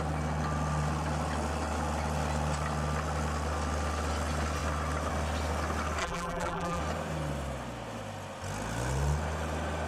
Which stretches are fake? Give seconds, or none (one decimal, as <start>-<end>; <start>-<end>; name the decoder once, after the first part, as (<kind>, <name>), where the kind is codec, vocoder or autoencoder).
6.0-6.8 (vocoder, BigVGAN v2)